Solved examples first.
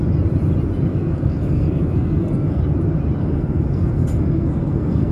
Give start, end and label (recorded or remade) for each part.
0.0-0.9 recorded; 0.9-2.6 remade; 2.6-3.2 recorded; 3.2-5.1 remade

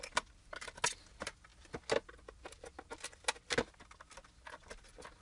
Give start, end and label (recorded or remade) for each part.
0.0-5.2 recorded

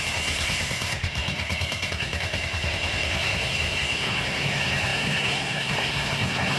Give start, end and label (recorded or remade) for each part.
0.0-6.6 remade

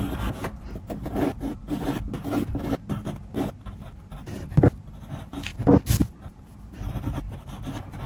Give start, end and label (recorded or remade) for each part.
0.0-8.1 recorded